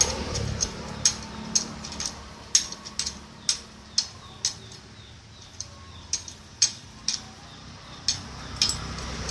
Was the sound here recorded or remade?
recorded